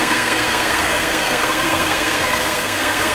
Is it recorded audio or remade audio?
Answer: remade